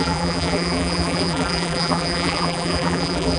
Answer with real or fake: fake